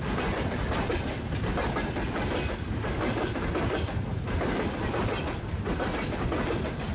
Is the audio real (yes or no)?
yes